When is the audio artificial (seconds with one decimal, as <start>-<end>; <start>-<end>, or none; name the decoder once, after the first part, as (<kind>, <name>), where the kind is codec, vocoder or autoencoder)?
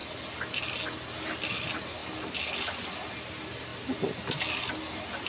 none